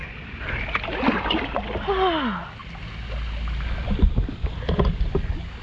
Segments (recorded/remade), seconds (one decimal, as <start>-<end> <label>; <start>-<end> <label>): 0.0-5.6 recorded